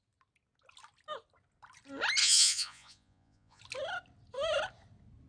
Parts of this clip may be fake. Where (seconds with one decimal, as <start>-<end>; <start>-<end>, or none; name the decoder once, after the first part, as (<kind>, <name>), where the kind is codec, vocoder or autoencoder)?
2.2-3.6 (vocoder, Vocos)